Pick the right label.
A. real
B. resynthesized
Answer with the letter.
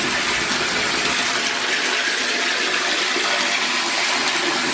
A